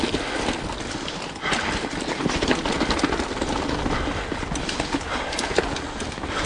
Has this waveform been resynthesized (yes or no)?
no